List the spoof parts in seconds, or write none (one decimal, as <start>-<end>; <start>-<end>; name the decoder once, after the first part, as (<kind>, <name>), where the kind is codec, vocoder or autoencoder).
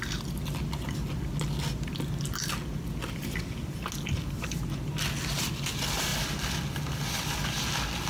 none